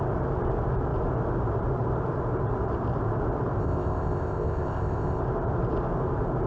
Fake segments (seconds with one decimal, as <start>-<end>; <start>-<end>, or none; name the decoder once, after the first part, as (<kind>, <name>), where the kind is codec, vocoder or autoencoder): 3.6-5.2 (codec, ZipCodec)